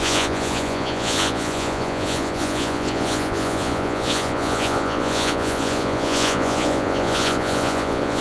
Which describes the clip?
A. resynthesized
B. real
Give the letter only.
A